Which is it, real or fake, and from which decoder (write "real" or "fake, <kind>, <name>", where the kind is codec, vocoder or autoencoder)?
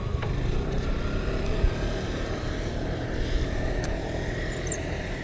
real